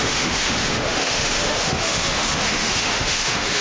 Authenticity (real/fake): fake